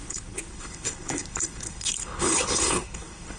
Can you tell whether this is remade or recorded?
remade